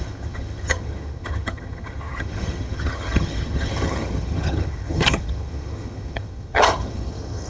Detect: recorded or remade remade